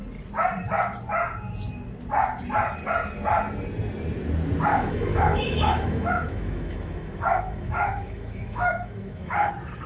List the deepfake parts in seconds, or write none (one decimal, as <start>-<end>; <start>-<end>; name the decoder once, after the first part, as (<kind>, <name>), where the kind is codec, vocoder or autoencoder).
4.7-9.5 (autoencoder, DAC-VAE)